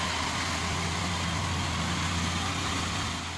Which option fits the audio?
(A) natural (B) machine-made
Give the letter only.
A